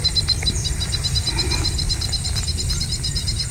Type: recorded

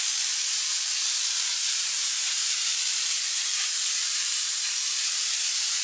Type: remade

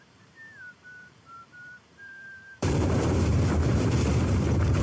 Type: remade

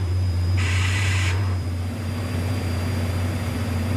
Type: remade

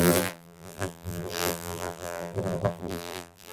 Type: remade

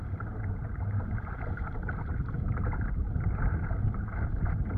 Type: remade